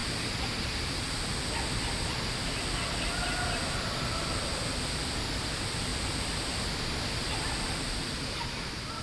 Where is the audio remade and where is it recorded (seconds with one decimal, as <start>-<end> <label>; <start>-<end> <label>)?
0.0-9.0 recorded

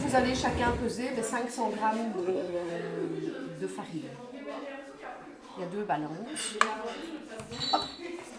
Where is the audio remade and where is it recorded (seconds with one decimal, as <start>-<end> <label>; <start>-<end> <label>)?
0.0-2.2 recorded; 2.2-2.7 remade; 2.7-8.4 recorded

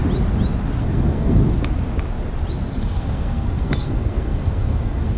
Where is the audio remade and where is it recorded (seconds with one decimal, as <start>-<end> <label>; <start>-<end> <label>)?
0.0-0.8 recorded; 0.8-1.4 remade; 1.4-2.7 recorded; 2.7-5.2 remade

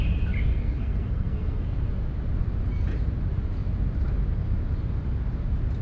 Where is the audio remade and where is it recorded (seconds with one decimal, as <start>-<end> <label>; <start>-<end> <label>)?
0.0-0.5 recorded; 0.5-1.9 remade; 1.9-5.8 recorded

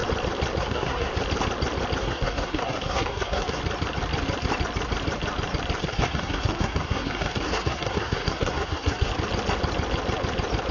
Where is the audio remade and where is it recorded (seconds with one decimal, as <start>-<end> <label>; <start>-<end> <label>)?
0.0-0.6 recorded; 0.6-1.1 remade; 1.1-2.0 recorded; 2.0-3.6 remade; 3.6-5.8 recorded; 5.8-9.1 remade; 9.1-10.7 recorded

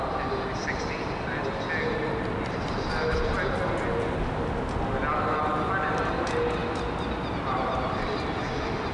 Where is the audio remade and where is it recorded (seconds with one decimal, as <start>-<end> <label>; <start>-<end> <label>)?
0.0-8.9 recorded

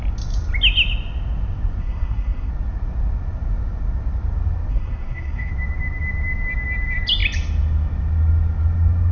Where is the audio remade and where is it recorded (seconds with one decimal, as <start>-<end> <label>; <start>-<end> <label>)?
0.0-1.8 recorded; 1.8-2.5 remade; 2.5-4.7 recorded; 4.7-5.5 remade; 5.5-9.1 recorded

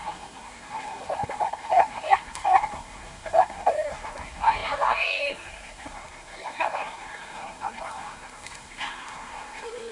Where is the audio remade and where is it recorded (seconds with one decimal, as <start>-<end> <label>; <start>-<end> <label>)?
0.0-9.9 remade